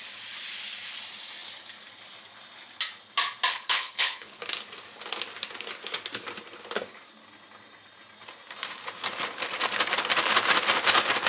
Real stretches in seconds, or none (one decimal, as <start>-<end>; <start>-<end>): 0.0-3.5; 4.4-11.3